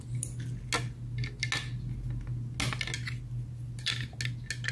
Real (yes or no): yes